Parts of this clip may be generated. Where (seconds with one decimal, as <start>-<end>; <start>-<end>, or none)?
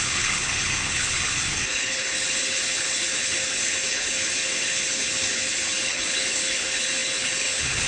0.0-7.9